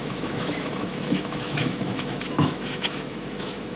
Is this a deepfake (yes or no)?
yes